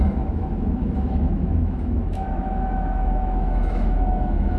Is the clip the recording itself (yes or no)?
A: no